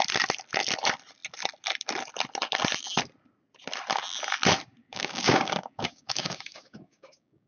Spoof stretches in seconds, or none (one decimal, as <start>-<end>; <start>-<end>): 4.8-7.5